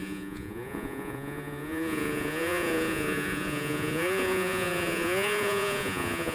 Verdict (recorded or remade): remade